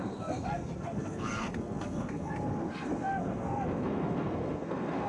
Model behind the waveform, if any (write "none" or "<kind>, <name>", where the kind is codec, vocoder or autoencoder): codec, SNAC